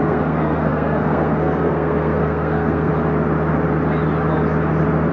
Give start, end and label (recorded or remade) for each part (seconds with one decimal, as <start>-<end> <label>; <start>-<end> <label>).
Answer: 0.0-2.9 remade; 2.9-5.1 recorded